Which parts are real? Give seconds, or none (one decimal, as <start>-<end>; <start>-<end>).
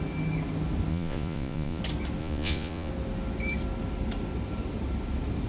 0.0-0.9; 1.8-2.2; 2.9-5.5